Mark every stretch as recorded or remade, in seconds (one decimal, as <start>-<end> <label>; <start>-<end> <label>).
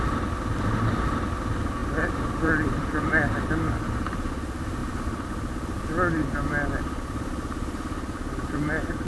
0.0-1.8 recorded; 1.8-3.0 remade; 3.0-9.1 recorded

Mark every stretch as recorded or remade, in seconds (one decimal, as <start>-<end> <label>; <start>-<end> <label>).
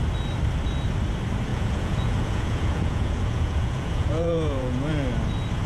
0.0-1.5 recorded; 1.5-4.9 remade; 4.9-5.7 recorded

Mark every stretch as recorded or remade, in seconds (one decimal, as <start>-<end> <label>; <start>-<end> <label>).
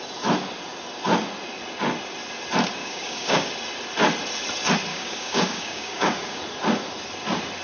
0.0-2.8 recorded; 2.8-3.5 remade; 3.5-4.9 recorded; 4.9-6.4 remade; 6.4-7.6 recorded